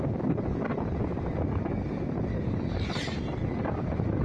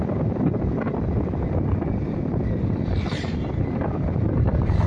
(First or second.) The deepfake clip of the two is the second